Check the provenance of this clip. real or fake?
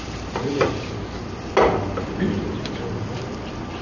real